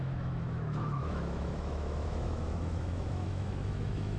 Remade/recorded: remade